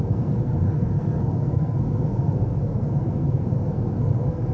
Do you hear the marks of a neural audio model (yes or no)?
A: yes